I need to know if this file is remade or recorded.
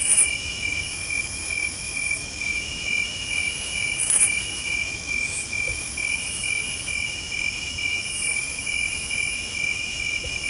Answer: remade